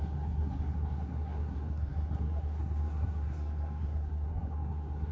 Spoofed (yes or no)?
yes